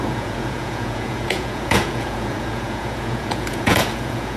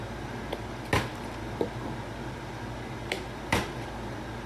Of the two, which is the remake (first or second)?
first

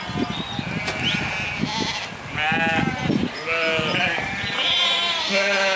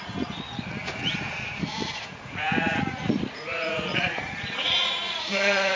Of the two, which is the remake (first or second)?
second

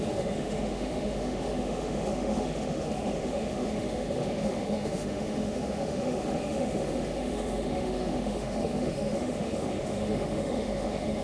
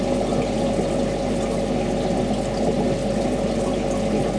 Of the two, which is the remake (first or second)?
first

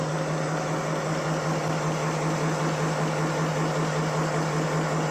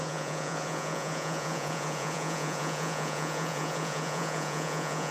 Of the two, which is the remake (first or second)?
second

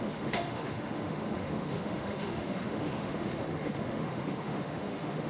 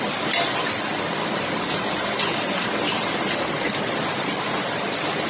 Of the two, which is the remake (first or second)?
first